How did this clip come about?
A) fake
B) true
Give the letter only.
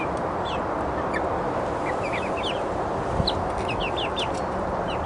B